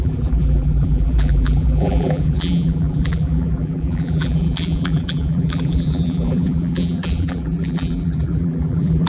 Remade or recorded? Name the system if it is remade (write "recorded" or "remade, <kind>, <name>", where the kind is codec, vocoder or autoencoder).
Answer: remade, vocoder, BigVGAN v2